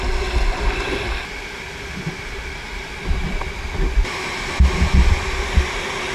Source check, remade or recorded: recorded